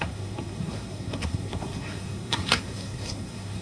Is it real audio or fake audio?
fake